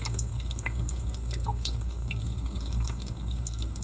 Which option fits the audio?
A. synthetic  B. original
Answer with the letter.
A